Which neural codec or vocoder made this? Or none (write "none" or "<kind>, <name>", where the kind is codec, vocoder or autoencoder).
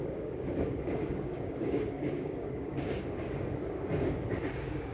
codec, DAC